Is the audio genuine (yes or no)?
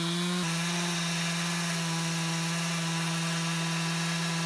yes